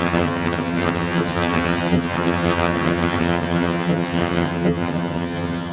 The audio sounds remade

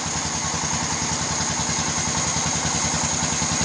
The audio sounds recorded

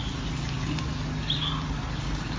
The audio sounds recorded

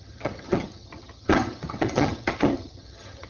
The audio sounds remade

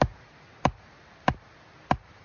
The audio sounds recorded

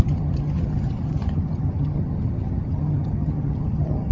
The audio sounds remade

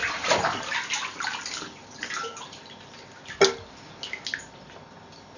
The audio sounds recorded